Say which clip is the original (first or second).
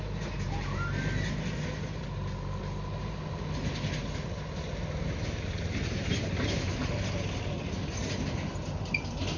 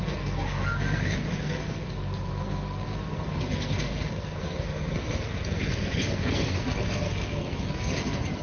first